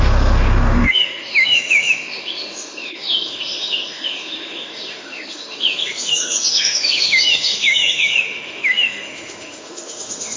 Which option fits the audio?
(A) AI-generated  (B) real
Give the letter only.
A